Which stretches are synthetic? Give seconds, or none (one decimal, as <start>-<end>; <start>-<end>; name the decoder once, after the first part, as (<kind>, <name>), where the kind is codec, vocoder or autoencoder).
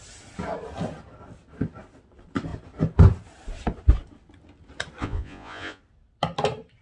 5.0-5.8 (vocoder, Vocos)